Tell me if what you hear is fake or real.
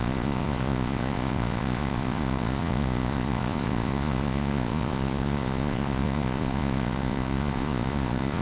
fake